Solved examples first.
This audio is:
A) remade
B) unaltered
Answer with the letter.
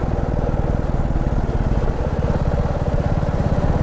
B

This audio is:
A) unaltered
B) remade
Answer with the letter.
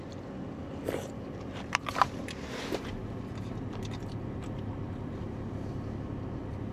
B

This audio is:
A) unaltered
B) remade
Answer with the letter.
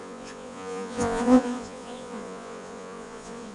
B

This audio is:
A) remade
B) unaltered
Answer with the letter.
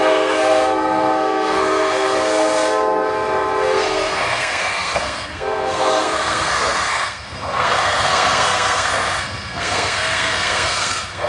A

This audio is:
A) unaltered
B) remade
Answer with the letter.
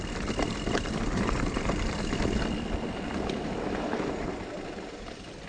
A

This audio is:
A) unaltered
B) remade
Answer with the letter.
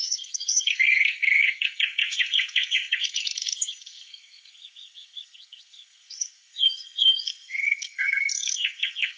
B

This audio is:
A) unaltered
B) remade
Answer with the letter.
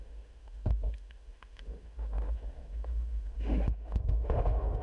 B